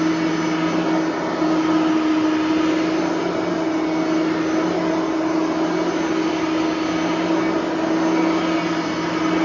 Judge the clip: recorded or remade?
recorded